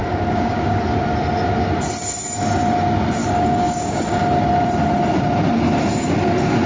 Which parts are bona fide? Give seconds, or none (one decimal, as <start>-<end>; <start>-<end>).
0.8-3.2; 4.2-6.7